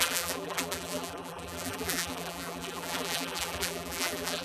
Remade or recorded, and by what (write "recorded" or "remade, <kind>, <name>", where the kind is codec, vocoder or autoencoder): remade, vocoder, BigVGAN v2